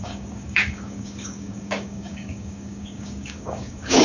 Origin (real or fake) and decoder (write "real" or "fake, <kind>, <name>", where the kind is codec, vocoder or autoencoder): fake, codec, DAC